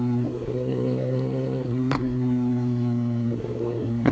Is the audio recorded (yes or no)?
no